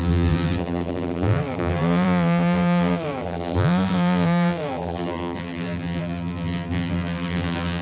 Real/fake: fake